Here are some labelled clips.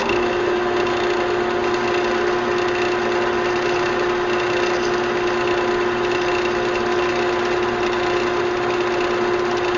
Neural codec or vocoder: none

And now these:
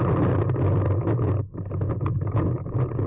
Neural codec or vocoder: none